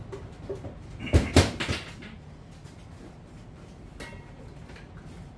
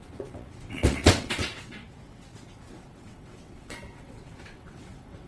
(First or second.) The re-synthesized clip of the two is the second